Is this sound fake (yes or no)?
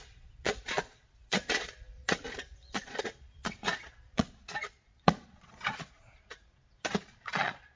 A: yes